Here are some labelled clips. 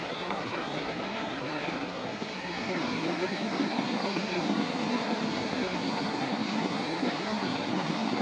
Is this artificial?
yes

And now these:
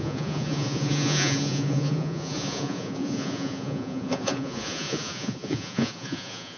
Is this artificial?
yes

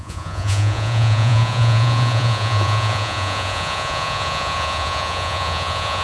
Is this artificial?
yes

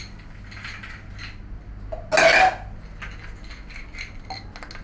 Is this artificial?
no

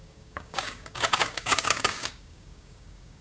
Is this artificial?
yes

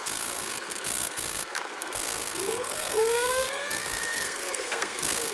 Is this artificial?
yes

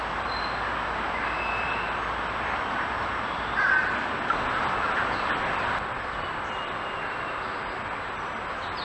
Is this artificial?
no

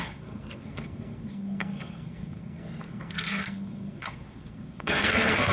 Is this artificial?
yes